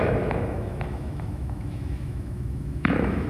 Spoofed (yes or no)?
yes